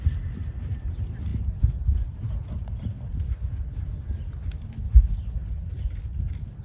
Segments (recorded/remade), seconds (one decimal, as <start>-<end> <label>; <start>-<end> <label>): 0.0-6.6 recorded